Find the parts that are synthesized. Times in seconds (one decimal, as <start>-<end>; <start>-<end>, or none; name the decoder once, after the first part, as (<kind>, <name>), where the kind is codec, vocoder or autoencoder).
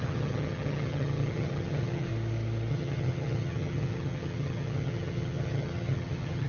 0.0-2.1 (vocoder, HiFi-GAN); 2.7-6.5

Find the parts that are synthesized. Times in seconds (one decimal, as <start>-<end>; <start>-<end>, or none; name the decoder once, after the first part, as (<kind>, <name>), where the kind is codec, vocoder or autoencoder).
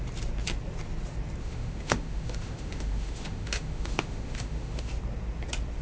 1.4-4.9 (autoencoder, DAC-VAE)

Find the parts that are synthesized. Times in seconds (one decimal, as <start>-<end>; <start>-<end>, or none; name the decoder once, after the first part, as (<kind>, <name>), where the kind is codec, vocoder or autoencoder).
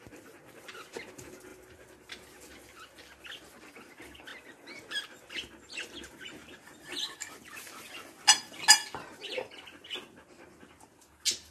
none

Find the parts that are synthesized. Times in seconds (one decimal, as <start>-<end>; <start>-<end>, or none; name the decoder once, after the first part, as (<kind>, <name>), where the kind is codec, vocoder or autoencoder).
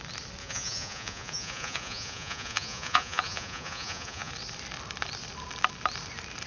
0.4-4.3 (vocoder, Vocos)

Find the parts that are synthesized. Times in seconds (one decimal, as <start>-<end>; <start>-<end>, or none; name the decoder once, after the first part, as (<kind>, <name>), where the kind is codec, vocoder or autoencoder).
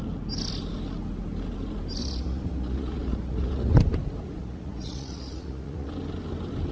2.0-3.8 (vocoder, Vocos); 4.4-5.9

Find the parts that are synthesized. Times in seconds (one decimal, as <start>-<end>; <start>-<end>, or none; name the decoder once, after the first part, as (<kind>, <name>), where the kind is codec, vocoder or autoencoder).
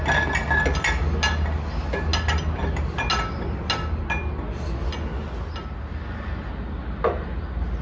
none